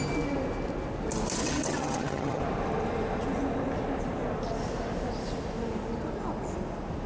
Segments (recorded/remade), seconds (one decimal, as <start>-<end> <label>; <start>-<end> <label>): 0.0-1.4 recorded; 1.4-2.4 remade; 2.4-7.1 recorded